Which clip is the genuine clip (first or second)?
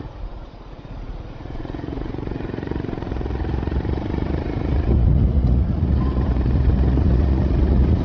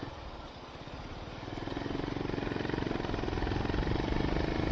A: second